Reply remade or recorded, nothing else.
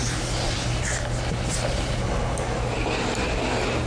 recorded